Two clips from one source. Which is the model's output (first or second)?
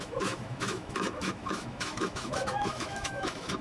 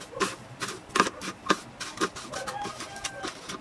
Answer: first